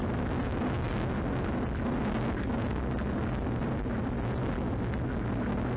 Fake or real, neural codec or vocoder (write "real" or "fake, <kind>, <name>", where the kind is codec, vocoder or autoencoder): real